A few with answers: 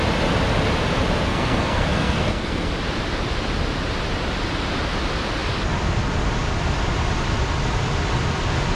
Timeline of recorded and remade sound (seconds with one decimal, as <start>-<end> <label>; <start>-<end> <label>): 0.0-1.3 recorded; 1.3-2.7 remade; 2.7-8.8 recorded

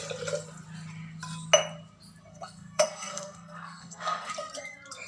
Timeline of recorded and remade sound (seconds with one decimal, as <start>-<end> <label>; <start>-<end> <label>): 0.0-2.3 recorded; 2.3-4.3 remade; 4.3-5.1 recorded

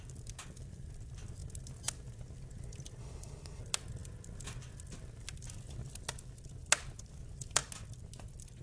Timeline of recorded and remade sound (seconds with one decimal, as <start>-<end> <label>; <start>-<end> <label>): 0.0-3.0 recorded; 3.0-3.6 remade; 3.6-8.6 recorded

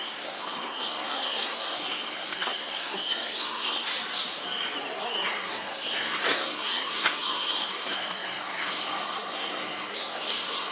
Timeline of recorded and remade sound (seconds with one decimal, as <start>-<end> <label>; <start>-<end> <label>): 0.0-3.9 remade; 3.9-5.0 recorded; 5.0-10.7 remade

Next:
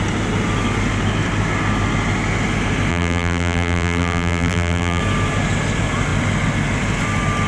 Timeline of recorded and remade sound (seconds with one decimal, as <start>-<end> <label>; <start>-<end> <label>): 0.0-2.9 recorded; 2.9-5.0 remade; 5.0-7.5 recorded

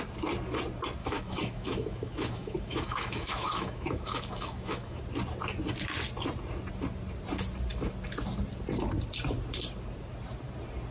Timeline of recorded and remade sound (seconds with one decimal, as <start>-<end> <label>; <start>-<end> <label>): 0.0-1.0 recorded; 1.0-5.0 remade; 5.0-10.9 recorded

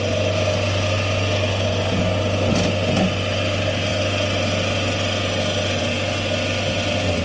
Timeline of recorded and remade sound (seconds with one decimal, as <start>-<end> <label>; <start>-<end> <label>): 0.0-7.2 recorded